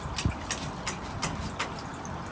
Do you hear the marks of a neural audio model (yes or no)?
no